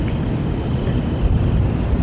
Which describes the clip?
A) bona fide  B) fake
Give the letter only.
A